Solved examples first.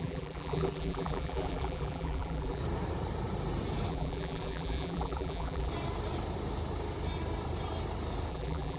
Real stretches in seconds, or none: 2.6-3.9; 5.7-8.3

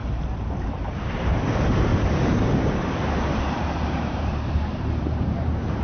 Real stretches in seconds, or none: 1.5-1.9

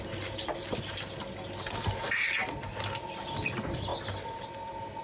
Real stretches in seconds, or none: 0.0-2.4; 3.2-5.0

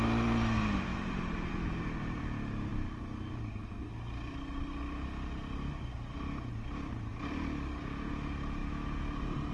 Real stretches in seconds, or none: 0.0-0.9; 2.2-9.5

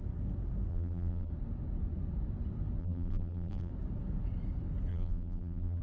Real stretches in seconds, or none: 0.0-0.7; 1.3-2.8; 3.7-4.9